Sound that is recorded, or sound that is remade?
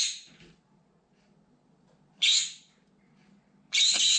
recorded